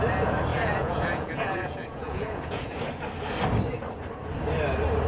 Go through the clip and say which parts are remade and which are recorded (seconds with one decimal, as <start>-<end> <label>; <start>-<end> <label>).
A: 0.0-0.5 recorded; 0.5-2.7 remade; 2.7-5.1 recorded